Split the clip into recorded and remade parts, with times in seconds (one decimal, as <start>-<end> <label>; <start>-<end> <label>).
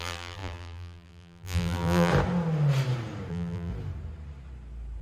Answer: 0.0-2.1 remade; 2.1-3.3 recorded; 3.3-3.7 remade; 3.7-5.0 recorded